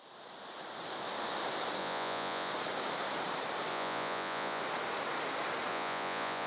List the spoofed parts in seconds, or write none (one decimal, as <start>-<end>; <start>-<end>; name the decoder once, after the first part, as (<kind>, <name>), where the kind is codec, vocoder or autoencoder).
1.8-2.5 (vocoder, Vocos); 3.7-4.6; 5.7-6.5